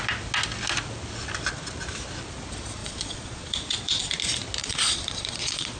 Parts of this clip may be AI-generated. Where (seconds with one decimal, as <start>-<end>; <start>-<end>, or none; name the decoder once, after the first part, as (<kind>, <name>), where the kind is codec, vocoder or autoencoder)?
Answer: 2.8-4.1 (vocoder, Vocos); 4.6-5.8